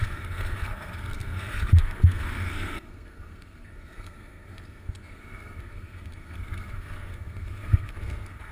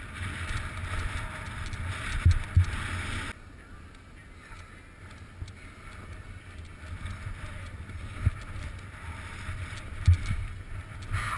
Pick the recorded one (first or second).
second